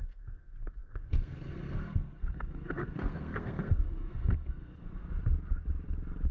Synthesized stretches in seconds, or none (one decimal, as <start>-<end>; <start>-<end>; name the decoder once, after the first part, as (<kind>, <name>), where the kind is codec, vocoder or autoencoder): 0.0-5.0 (codec, SNAC)